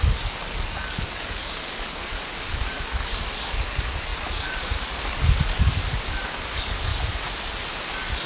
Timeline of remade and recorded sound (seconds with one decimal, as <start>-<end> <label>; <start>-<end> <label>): 0.0-6.9 remade; 6.9-7.8 recorded; 7.8-8.3 remade